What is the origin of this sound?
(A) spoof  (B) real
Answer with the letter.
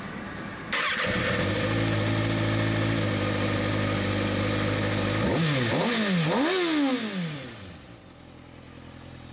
B